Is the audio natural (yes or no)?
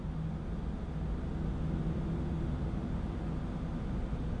yes